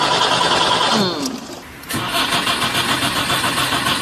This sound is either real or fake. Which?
real